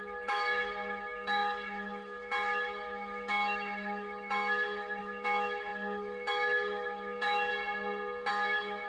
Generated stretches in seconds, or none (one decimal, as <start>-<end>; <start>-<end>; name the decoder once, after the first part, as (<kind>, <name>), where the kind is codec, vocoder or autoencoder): 0.0-7.5 (autoencoder, DAC-VAE); 8.3-8.9